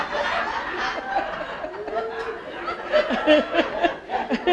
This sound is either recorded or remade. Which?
recorded